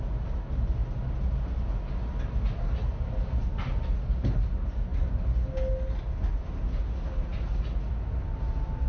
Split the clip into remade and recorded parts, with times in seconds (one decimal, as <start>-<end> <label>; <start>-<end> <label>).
0.0-8.9 recorded